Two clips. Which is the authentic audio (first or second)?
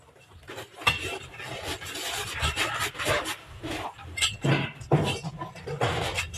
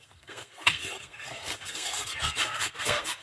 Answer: first